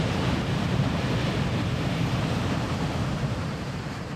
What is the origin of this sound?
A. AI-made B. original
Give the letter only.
A